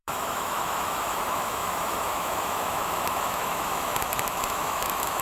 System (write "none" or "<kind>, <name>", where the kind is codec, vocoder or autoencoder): autoencoder, DAC-VAE